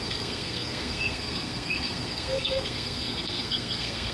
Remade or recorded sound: remade